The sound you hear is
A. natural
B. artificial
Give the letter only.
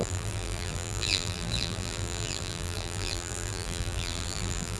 B